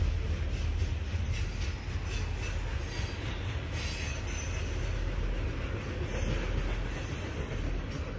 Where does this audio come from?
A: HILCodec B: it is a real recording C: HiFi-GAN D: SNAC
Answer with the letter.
B